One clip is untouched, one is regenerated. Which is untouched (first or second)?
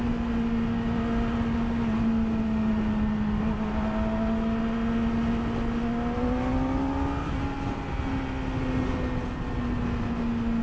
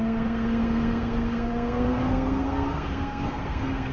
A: first